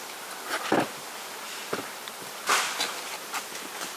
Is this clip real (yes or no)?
yes